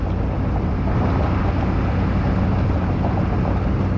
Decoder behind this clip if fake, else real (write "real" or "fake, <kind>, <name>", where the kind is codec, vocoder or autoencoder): real